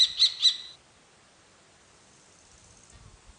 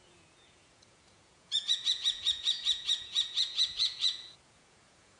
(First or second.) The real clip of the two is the first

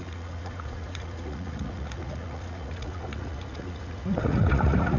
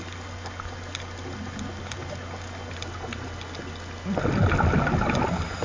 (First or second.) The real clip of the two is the second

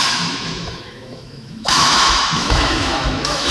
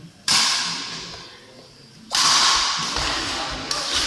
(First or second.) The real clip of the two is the second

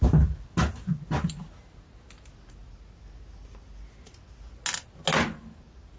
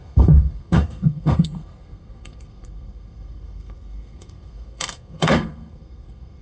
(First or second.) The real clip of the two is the first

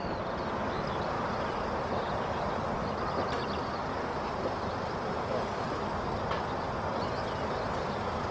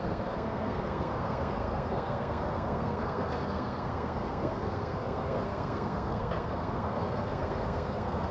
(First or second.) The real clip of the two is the first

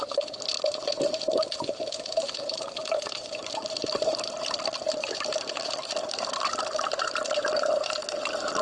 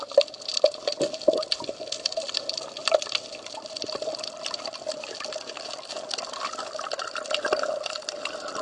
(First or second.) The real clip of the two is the second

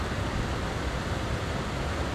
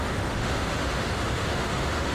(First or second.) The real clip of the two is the first